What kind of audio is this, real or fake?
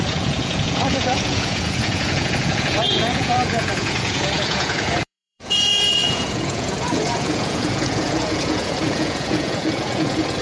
fake